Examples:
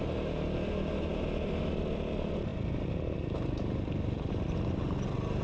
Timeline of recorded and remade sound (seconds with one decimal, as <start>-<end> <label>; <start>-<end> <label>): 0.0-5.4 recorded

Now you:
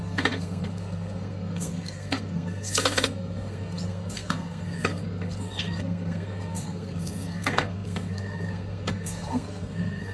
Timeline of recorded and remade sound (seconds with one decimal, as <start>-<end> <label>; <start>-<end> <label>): 0.0-10.1 remade

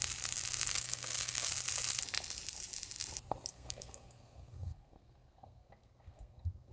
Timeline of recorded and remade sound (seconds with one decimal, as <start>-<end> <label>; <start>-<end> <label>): 0.0-0.7 recorded; 0.7-1.5 remade; 1.5-3.5 recorded; 3.5-6.7 remade